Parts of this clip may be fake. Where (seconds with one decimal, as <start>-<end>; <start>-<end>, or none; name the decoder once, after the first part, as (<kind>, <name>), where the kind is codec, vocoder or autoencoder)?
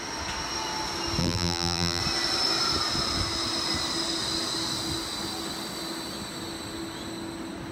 1.2-2.0 (vocoder, BigVGAN v2)